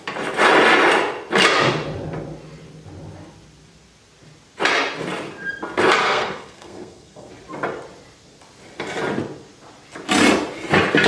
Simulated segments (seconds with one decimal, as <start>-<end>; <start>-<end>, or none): 6.0-7.3